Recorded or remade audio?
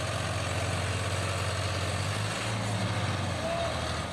recorded